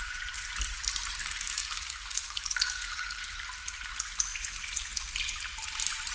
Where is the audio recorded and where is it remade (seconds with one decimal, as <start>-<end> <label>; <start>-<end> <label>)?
0.0-1.2 recorded; 1.2-3.2 remade; 3.2-6.1 recorded